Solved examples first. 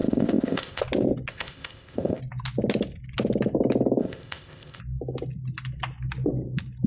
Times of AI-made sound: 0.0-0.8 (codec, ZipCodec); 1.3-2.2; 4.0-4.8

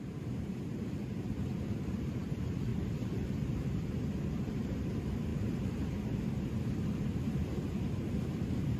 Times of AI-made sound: 0.0-2.7 (vocoder, BigVGAN v2); 4.3-8.8

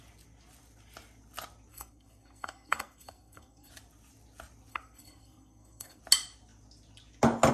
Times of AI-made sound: 1.7-3.7 (codec, SNAC); 4.7-6.0

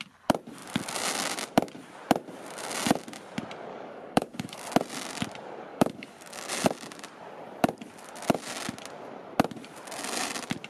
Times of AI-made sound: 3.7-4.6 (codec, DAC); 5.7-6.5

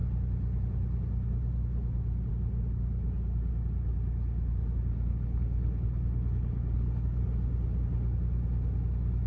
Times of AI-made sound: 5.1-7.2 (codec, HILCodec)